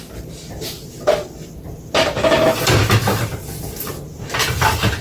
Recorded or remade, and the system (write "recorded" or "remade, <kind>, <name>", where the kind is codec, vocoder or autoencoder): recorded